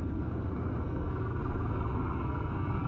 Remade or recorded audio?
remade